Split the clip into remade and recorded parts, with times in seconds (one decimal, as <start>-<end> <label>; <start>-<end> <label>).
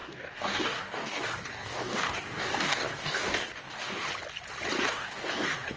0.0-4.1 remade; 4.1-4.9 recorded; 4.9-5.8 remade